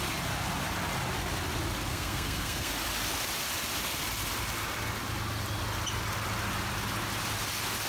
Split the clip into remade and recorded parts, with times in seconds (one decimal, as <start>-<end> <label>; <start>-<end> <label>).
0.0-1.9 recorded; 1.9-2.7 remade; 2.7-7.9 recorded